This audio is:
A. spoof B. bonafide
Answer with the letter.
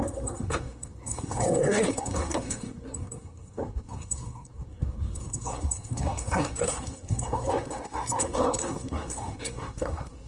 A